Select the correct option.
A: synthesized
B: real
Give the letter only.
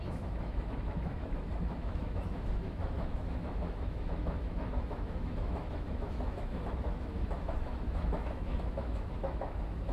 A